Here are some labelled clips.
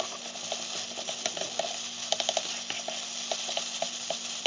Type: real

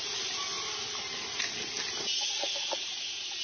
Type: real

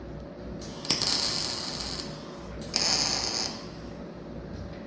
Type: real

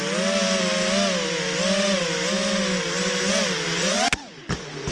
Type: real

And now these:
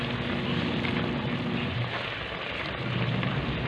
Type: real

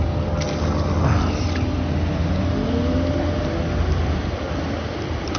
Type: real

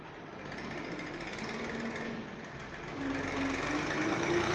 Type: real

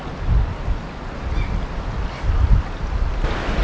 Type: real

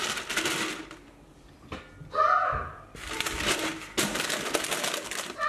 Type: real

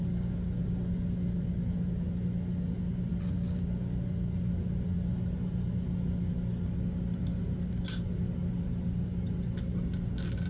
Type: real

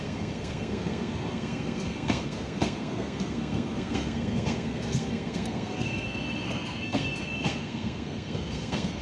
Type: fake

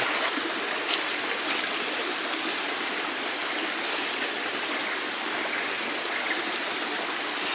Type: real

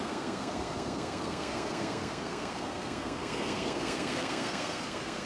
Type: fake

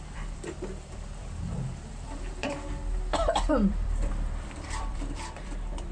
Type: fake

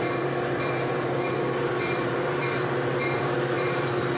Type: fake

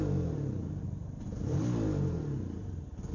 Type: real